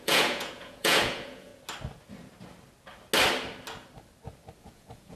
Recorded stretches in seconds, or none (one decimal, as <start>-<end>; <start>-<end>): 1.5-4.6